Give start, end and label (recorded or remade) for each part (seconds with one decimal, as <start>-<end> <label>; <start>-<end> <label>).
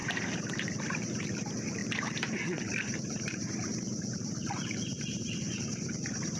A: 0.0-6.4 remade